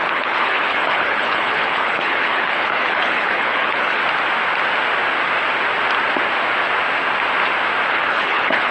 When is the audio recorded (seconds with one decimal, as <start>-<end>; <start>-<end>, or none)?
4.0-7.9